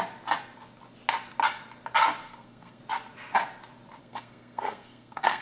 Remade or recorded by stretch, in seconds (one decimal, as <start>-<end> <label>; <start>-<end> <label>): 0.0-2.2 recorded; 2.2-2.8 remade; 2.8-4.0 recorded; 4.0-5.4 remade